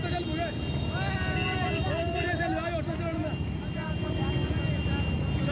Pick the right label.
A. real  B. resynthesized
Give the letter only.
A